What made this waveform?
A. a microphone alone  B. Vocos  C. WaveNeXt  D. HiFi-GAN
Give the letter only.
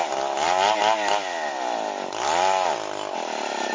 A